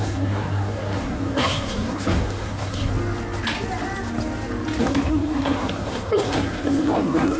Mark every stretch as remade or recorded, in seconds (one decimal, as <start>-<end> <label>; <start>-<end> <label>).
0.0-2.9 remade; 2.9-4.8 recorded; 4.8-7.4 remade